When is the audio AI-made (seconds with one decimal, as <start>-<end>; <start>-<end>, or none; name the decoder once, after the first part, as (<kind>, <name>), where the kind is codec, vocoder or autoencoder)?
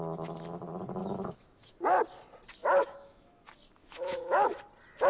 1.0-1.7 (autoencoder, DAC-VAE); 2.6-3.4; 3.8-4.6